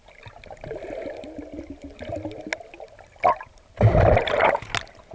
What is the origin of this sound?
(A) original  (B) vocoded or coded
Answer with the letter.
A